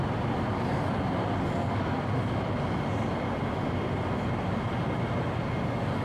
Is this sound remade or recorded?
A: recorded